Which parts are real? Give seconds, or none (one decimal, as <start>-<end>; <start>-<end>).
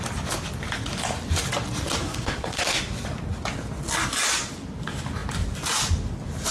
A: 0.0-2.0; 2.8-6.5